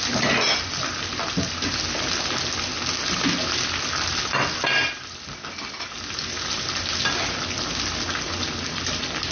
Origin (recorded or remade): recorded